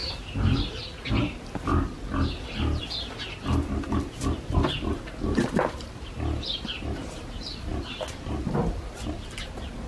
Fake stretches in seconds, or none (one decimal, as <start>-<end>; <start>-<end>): 0.0-0.8

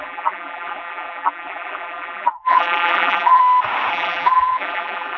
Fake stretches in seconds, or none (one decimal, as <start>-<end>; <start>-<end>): 0.0-3.4; 3.9-5.2

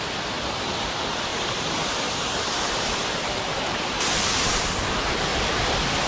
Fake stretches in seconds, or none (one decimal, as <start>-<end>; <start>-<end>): 1.3-4.6

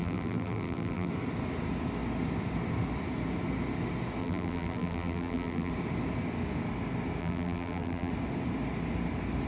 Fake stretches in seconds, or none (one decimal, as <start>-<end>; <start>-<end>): 0.0-1.1; 4.2-5.7; 7.2-8.1

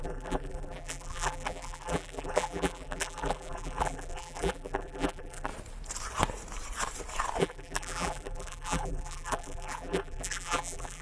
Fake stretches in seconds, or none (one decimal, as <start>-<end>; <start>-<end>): 0.0-5.5; 7.4-11.0